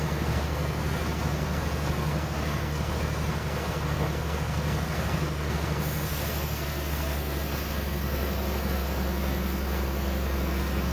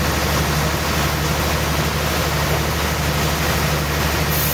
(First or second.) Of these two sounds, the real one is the second